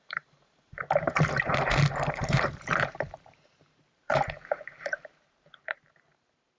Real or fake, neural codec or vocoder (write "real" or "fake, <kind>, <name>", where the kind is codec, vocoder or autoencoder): fake, vocoder, BigVGAN v2